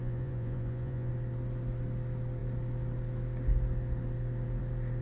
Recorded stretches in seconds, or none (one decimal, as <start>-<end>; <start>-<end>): 1.1-5.0